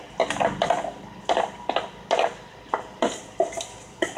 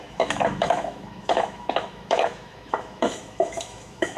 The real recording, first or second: first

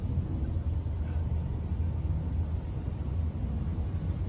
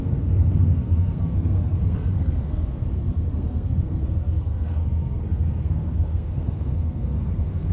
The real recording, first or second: first